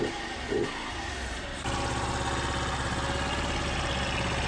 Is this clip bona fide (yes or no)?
yes